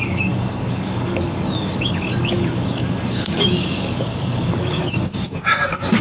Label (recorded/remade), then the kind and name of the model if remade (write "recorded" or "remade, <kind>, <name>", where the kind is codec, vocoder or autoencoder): remade, codec, DAC